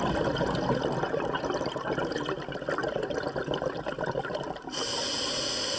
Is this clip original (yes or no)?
yes